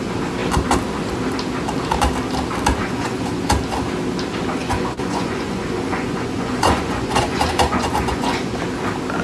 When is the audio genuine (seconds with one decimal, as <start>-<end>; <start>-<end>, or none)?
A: 0.0-2.8; 3.4-4.6; 8.6-9.2